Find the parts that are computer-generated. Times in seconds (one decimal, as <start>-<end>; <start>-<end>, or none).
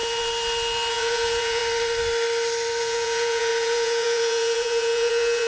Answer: 0.9-1.6; 2.8-5.5